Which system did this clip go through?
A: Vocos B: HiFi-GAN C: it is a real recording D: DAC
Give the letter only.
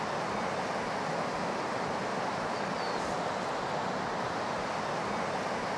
C